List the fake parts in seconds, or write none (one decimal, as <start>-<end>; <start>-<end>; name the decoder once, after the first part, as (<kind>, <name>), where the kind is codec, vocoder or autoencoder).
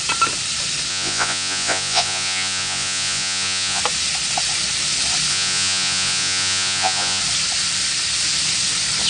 0.9-3.8 (vocoder, Vocos); 5.3-7.2